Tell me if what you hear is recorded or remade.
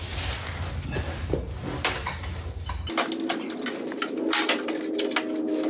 recorded